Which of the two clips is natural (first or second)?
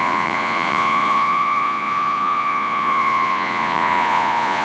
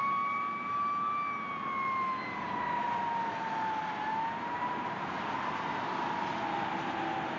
second